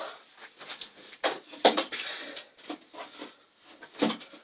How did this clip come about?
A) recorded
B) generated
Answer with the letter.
B